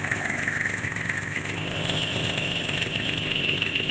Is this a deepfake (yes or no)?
yes